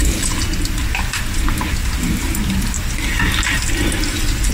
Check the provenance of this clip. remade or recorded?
recorded